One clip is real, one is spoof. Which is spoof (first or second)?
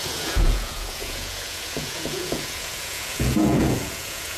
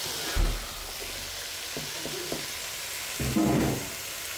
first